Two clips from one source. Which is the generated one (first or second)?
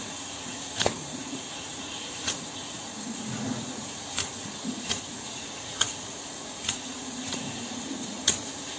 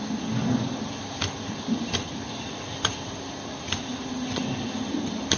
first